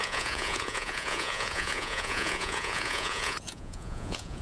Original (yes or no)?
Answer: no